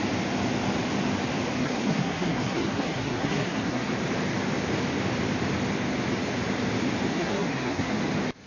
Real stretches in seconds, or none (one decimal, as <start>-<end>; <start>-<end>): 0.0-1.6; 3.9-7.1; 8.0-8.5